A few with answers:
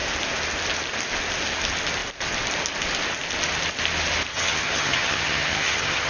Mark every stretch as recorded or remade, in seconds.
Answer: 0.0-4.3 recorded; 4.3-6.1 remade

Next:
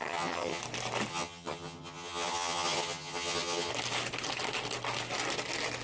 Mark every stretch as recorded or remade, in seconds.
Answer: 0.0-0.6 remade; 0.6-1.1 recorded; 1.1-3.7 remade; 3.7-5.8 recorded

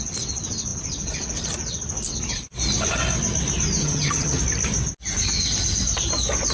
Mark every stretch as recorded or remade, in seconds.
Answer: 0.0-3.8 recorded; 3.8-4.4 remade; 4.4-6.5 recorded

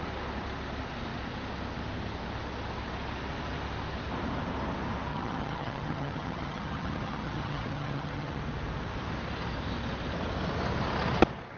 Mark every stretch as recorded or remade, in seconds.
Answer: 0.0-5.1 recorded; 5.1-8.4 remade; 8.4-11.6 recorded

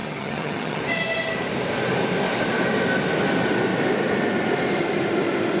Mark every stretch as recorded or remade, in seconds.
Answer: 0.0-0.8 remade; 0.8-5.6 recorded